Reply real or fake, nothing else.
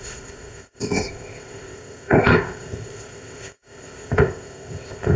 fake